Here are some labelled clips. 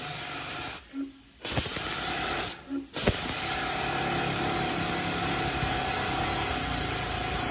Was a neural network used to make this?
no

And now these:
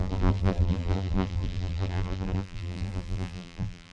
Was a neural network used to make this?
yes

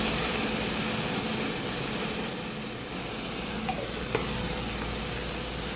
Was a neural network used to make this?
no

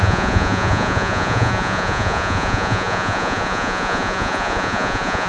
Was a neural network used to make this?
yes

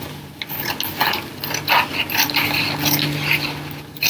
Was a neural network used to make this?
no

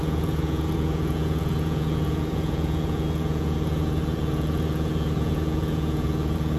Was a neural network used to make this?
yes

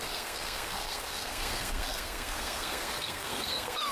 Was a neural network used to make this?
yes